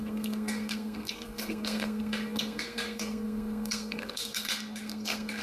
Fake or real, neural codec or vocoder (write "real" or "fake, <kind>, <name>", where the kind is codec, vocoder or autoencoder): fake, codec, SNAC